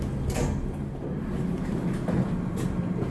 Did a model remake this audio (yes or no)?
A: no